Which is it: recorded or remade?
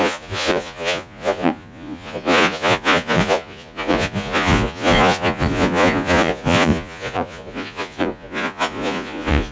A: remade